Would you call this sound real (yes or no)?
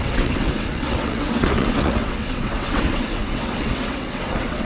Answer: no